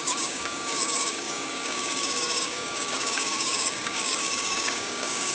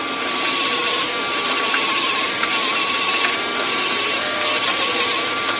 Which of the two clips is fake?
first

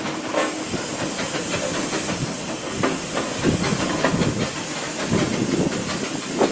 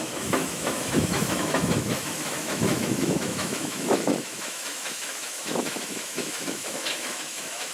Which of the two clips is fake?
second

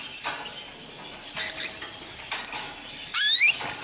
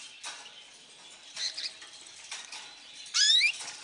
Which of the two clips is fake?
second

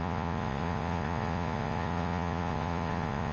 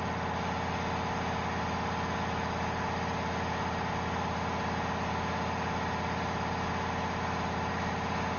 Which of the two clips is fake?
first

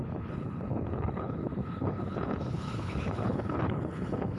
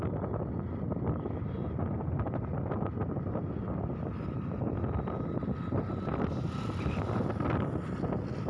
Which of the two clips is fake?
first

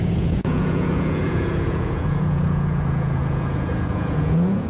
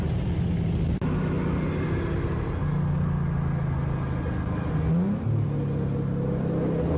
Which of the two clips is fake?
first